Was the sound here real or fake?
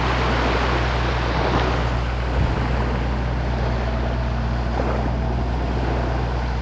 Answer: real